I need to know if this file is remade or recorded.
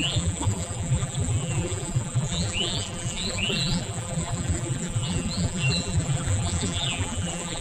remade